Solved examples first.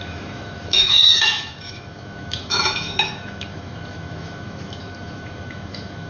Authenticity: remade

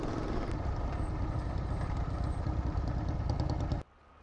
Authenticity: recorded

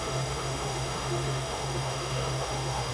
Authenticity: remade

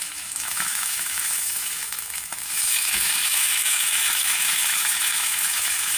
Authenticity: remade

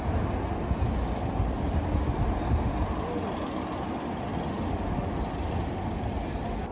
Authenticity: recorded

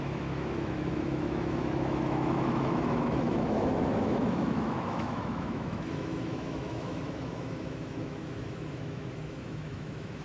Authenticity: remade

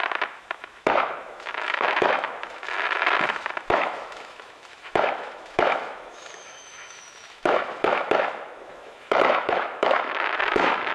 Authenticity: remade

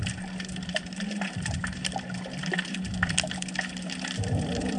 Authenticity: recorded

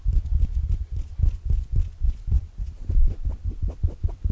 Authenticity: recorded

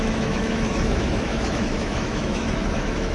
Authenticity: remade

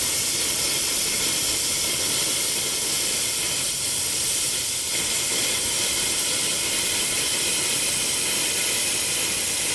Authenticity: recorded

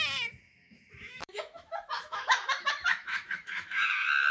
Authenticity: remade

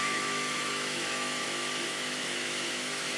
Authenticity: remade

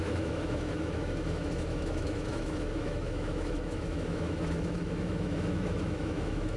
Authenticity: remade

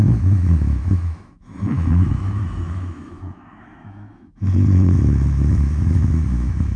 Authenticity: remade